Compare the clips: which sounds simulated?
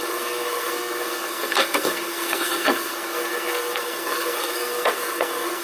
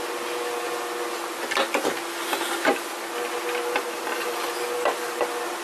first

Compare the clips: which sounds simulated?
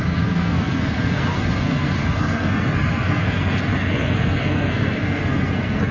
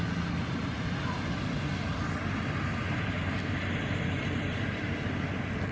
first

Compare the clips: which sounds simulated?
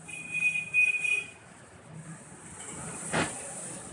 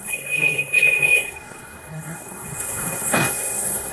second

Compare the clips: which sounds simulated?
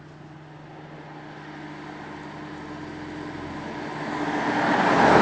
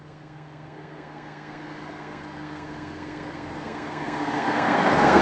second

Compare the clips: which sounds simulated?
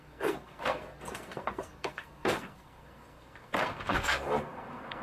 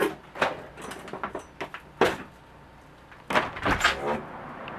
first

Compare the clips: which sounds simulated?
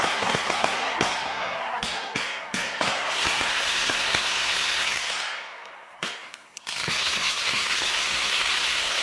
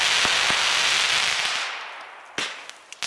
first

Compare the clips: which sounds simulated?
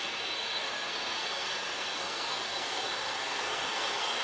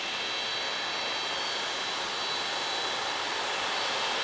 first